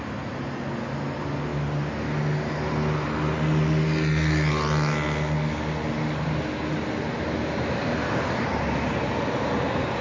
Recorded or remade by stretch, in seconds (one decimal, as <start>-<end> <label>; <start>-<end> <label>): 0.0-10.0 recorded